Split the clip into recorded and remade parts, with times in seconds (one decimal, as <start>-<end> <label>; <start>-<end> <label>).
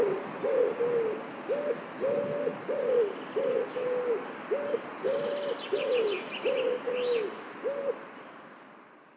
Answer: 0.0-9.2 recorded